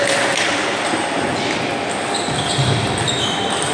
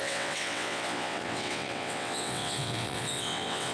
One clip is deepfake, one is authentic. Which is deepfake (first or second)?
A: second